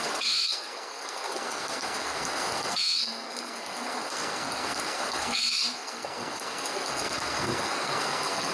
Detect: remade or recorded remade